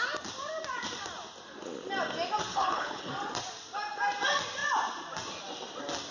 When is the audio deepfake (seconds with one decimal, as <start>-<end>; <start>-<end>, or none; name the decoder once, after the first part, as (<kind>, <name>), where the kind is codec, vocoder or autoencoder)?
2.5-3.1 (codec, HILCodec)